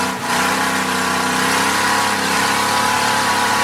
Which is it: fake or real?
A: real